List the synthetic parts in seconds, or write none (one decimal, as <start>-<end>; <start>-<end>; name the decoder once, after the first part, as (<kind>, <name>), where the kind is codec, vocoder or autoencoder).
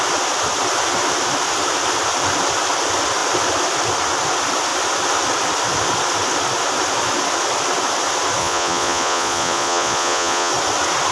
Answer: 8.4-10.5 (vocoder, Vocos)